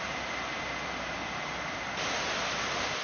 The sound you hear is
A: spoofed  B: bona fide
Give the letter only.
B